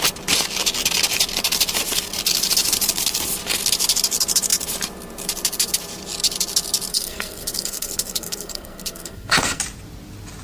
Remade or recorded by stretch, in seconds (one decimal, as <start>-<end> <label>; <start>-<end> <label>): 0.0-6.9 recorded; 6.9-9.6 remade; 9.6-10.4 recorded

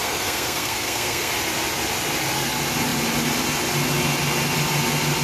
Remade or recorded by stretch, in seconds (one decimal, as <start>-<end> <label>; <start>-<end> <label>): 0.0-1.3 remade; 1.3-5.2 recorded

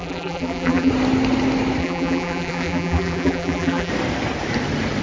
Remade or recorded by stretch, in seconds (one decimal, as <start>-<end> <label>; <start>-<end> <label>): 0.0-0.9 remade; 0.9-1.8 recorded; 1.8-3.9 remade; 3.9-5.0 recorded

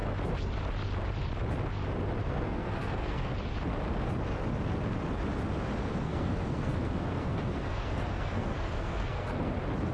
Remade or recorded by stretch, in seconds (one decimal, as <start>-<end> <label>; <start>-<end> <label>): 0.0-2.2 recorded; 2.2-3.3 remade; 3.3-5.8 recorded; 5.8-9.5 remade; 9.5-9.9 recorded